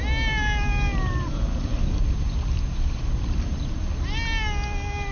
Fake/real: real